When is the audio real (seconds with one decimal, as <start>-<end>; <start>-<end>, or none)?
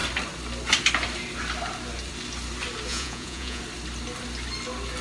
0.0-2.9; 3.6-5.0